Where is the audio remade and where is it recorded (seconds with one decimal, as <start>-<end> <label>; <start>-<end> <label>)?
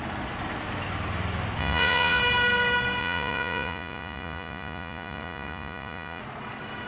0.0-1.6 recorded; 1.6-2.2 remade; 2.2-3.0 recorded; 3.0-6.2 remade; 6.2-6.9 recorded